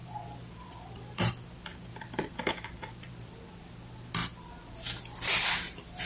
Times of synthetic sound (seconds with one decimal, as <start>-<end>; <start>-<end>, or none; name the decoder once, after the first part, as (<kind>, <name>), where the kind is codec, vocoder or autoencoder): 0.0-4.2 (vocoder, BigVGAN v2)